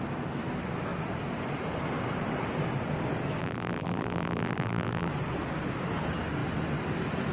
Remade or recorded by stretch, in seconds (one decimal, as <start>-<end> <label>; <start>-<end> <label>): 0.0-3.4 recorded; 3.4-5.1 remade; 5.1-7.3 recorded